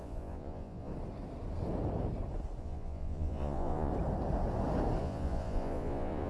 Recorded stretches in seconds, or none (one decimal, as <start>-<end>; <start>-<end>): 0.9-2.6; 3.9-5.0